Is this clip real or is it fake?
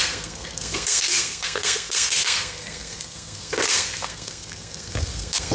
fake